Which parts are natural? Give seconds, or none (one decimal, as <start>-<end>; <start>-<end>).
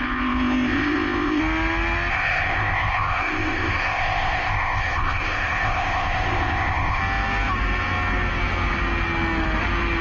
1.4-2.1; 7.0-10.0